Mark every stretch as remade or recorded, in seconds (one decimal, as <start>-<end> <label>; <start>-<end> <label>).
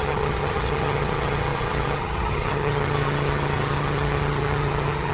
0.0-5.1 remade